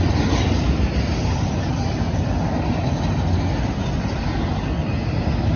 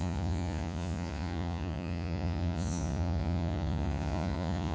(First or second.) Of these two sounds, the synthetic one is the second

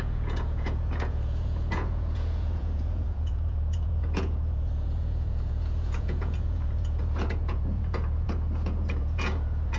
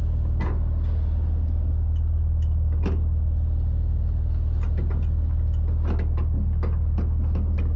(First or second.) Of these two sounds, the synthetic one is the first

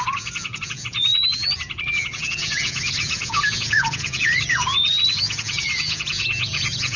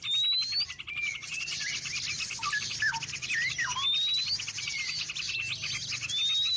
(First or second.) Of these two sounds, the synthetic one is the first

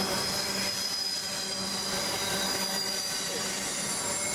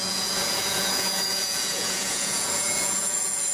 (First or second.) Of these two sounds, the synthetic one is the second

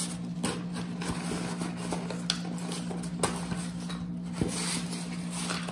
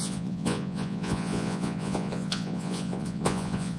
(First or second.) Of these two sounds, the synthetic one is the second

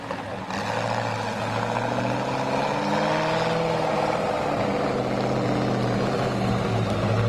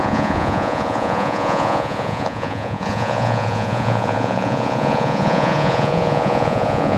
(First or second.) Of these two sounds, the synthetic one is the second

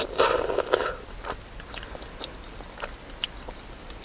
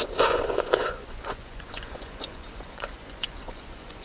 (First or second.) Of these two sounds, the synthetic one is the second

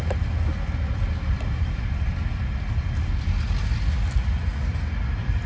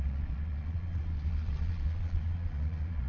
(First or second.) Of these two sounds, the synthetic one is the second